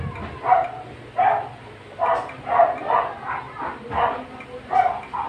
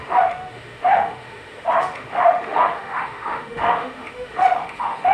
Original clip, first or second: first